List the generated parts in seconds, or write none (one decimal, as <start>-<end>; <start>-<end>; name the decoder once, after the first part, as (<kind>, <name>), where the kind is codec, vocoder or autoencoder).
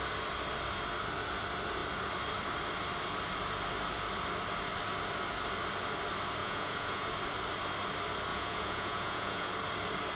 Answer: 6.4-7.1 (vocoder, Vocos); 8.3-9.5